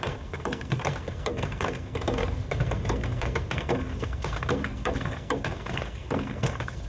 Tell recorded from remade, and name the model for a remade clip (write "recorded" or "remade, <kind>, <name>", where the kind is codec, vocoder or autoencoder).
remade, codec, SNAC